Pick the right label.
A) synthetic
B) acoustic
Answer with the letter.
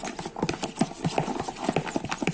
B